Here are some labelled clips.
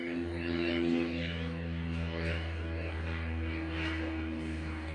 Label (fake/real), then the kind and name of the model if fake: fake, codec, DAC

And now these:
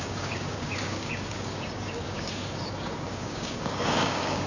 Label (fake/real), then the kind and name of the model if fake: fake, codec, DAC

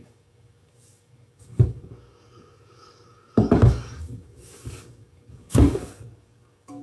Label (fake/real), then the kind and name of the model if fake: fake, codec, DAC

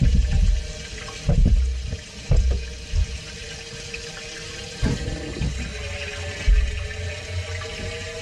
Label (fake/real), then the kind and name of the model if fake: real